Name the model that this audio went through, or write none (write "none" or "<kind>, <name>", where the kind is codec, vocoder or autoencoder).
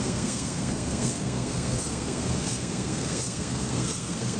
codec, SNAC